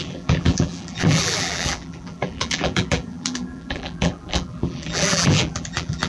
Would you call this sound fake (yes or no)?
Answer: yes